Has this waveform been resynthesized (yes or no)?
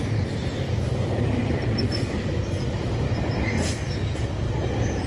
no